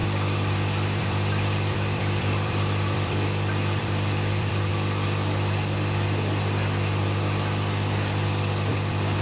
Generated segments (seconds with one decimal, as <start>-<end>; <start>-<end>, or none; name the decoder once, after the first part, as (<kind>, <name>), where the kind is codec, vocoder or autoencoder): 1.0-4.7 (vocoder, BigVGAN v2); 8.7-9.2